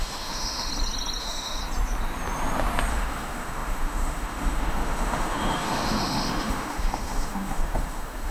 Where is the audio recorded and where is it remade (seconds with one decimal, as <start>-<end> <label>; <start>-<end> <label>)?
0.0-0.7 remade; 0.7-1.2 recorded; 1.2-1.6 remade; 1.6-2.9 recorded; 2.9-8.3 remade